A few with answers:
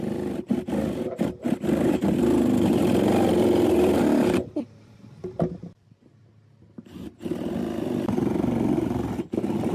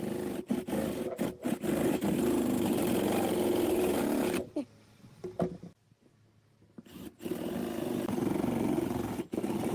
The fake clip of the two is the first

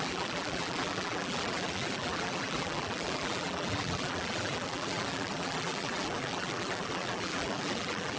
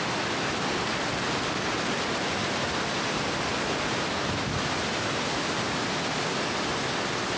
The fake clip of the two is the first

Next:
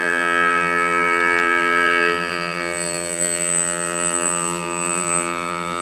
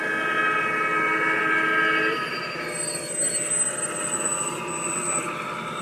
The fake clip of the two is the first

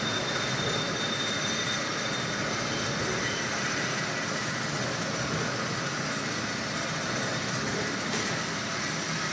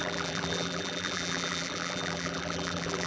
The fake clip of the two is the second